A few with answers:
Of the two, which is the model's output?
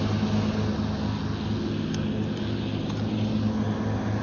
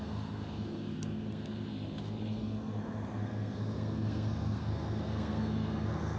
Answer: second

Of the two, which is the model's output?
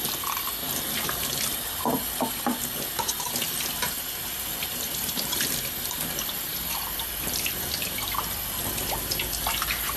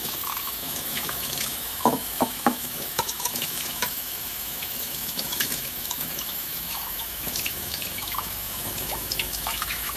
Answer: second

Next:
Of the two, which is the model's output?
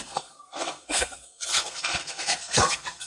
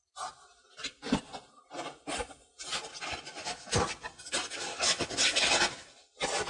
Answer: first